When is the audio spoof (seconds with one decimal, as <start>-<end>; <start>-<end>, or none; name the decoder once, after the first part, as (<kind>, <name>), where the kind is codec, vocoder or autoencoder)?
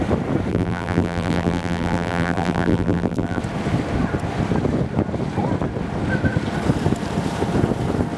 0.5-3.4 (vocoder, BigVGAN v2)